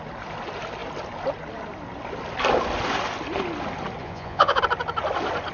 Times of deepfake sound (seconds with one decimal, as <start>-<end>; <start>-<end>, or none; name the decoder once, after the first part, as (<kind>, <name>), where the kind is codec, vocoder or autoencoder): 4.0-4.6 (vocoder, Vocos)